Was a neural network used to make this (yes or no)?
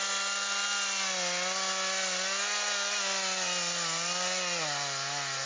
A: no